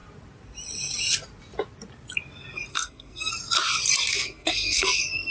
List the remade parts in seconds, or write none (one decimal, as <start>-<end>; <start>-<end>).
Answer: 2.7-3.3; 4.1-5.3